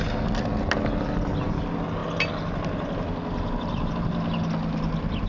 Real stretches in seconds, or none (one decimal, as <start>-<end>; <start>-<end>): 0.0-5.3